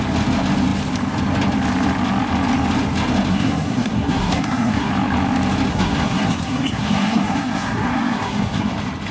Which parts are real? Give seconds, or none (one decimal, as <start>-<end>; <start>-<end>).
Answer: 0.0-3.3; 4.9-5.7; 8.7-9.1